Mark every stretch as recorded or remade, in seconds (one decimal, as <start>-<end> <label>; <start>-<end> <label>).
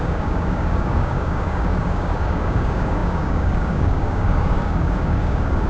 0.0-5.7 remade